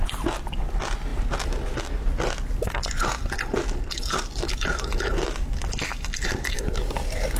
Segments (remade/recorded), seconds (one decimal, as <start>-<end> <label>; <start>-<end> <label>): 0.0-7.4 recorded